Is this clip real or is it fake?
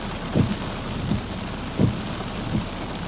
real